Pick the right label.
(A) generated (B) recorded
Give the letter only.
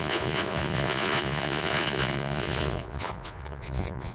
A